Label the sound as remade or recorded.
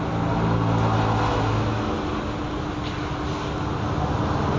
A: recorded